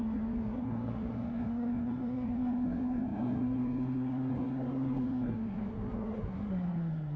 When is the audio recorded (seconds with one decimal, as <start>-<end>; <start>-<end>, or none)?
none